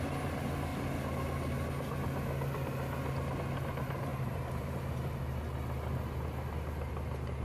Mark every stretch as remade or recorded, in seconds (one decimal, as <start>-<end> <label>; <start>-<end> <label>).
0.0-4.1 recorded; 4.1-5.2 remade; 5.2-7.4 recorded